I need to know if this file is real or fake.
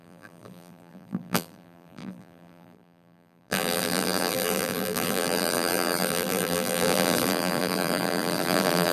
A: fake